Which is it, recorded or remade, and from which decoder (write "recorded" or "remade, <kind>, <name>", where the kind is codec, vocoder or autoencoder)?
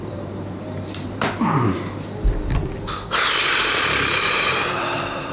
remade, vocoder, BigVGAN v2